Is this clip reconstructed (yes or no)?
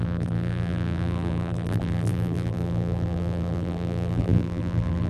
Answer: yes